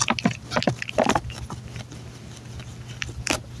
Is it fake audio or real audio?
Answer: real